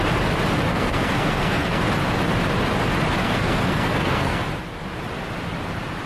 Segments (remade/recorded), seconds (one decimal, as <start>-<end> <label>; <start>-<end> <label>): 0.0-0.7 recorded; 0.7-1.8 remade; 1.8-3.2 recorded; 3.2-4.4 remade; 4.4-6.1 recorded